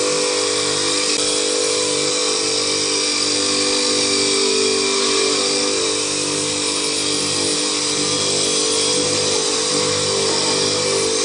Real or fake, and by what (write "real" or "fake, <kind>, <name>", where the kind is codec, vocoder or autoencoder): real